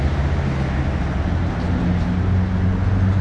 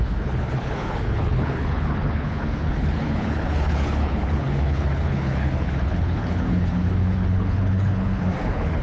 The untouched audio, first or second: first